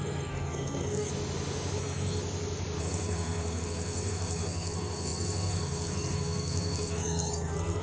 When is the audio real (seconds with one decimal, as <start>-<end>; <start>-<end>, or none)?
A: 1.1-1.8; 2.2-2.8